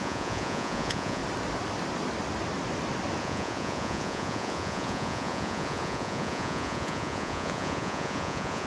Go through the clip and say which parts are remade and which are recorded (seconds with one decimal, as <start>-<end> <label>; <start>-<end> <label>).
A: 0.0-1.2 remade; 1.2-3.2 recorded; 3.2-8.7 remade